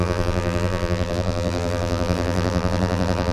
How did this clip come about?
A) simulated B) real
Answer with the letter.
A